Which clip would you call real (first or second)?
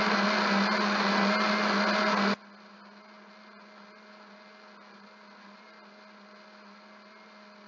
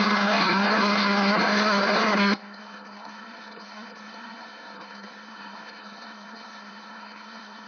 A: first